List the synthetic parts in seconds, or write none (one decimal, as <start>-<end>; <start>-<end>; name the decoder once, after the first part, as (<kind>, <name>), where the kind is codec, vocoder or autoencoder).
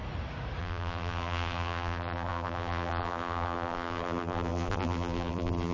0.6-5.7 (vocoder, BigVGAN v2)